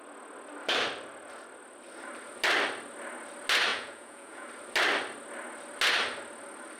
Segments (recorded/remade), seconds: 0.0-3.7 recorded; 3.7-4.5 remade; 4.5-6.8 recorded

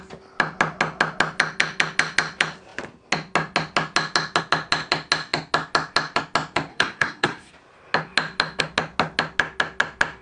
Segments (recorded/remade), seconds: 0.0-6.7 recorded; 6.7-7.5 remade; 7.5-10.2 recorded

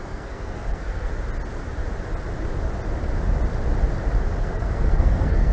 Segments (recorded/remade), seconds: 0.0-1.1 remade; 1.1-4.4 recorded; 4.4-5.5 remade

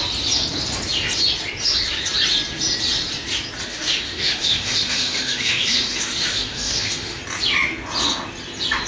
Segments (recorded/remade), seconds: 0.0-3.7 recorded; 3.7-7.2 remade; 7.2-8.9 recorded

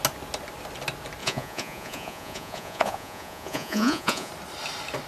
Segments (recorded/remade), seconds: 0.0-1.2 recorded; 1.2-4.3 remade; 4.3-5.1 recorded

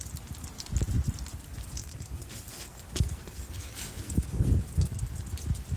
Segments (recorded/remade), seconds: 0.0-1.8 recorded; 1.8-5.0 remade; 5.0-5.8 recorded